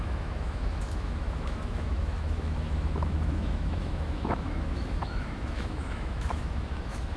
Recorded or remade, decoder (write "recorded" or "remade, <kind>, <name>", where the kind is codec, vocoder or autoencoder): remade, autoencoder, DAC-VAE